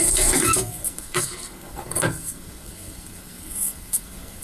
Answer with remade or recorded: remade